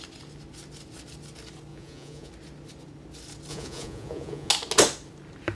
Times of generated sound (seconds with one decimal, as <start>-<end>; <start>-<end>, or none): 1.7-2.3; 3.5-4.5